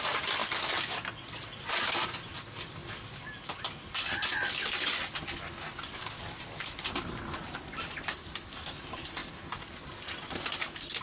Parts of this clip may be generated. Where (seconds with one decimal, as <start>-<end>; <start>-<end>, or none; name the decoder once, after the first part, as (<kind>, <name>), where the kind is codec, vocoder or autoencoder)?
0.0-2.8 (vocoder, BigVGAN v2); 5.6-11.0